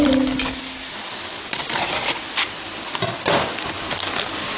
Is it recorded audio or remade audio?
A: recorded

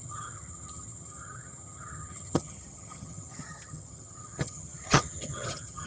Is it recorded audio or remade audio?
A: remade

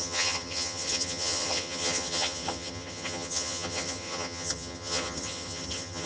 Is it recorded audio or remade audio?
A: remade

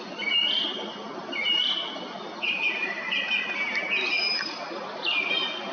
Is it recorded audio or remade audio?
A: recorded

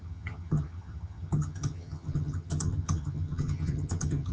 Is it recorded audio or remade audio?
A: remade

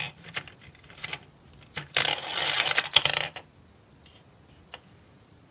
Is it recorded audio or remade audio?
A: recorded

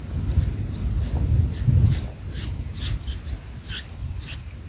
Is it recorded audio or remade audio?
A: recorded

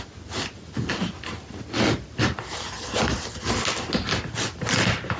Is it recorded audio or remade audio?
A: recorded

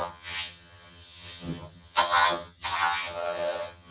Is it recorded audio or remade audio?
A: remade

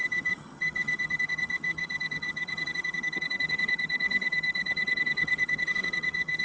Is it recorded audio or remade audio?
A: remade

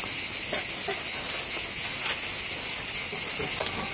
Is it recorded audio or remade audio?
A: recorded